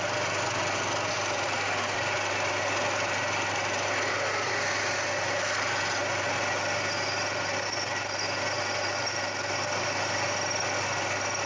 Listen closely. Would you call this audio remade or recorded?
recorded